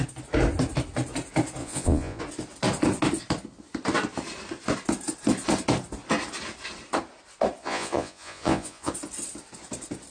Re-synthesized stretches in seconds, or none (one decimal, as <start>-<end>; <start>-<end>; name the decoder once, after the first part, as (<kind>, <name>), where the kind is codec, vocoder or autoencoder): 1.6-2.2 (vocoder, Vocos); 7.6-8.9